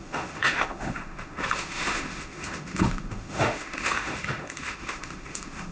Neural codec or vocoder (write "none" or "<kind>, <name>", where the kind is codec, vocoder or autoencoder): autoencoder, DAC-VAE